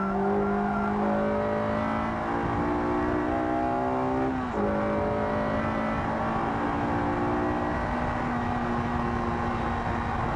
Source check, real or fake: real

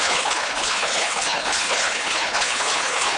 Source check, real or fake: fake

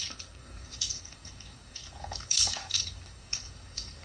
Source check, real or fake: fake